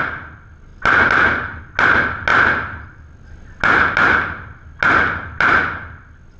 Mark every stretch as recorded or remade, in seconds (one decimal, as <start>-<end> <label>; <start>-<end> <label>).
0.0-6.4 recorded